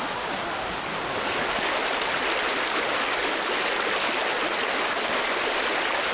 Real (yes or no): yes